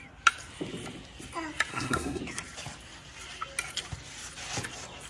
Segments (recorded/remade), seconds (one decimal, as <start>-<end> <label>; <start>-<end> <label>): 0.0-1.7 recorded; 1.7-2.2 remade; 2.2-5.1 recorded